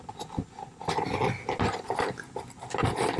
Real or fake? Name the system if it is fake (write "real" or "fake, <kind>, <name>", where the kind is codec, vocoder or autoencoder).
real